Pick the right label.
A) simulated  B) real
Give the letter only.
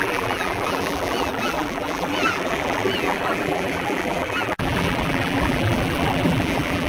A